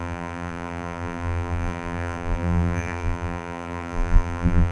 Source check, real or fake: fake